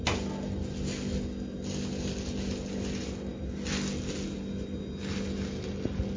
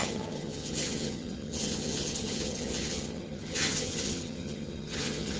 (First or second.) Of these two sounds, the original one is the first